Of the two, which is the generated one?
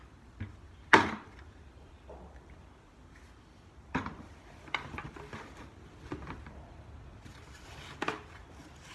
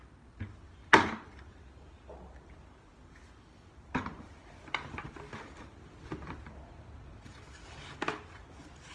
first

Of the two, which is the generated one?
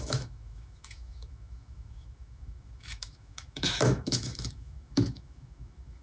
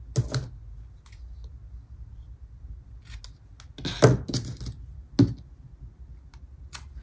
first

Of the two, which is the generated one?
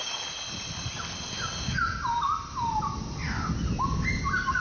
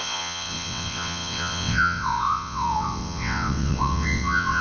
second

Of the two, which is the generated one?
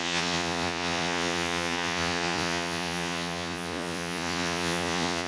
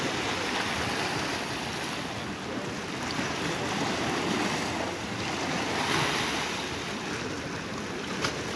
first